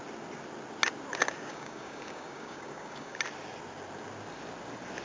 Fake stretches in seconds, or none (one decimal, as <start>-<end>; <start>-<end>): 1.5-3.2